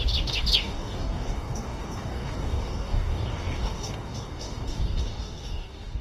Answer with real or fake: fake